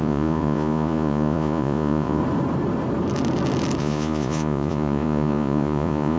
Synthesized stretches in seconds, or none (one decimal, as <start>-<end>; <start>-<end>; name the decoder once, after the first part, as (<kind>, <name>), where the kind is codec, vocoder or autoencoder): 0.0-2.2 (vocoder, Vocos); 3.8-6.2